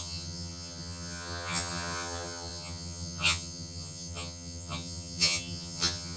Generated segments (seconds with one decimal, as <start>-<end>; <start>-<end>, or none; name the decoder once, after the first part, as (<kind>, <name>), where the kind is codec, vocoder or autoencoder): 0.0-6.2 (vocoder, HiFi-GAN)